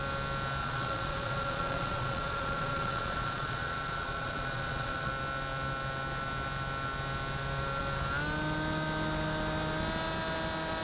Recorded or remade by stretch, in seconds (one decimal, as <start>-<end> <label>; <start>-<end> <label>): 0.0-0.6 recorded; 0.6-5.1 remade; 5.1-10.8 recorded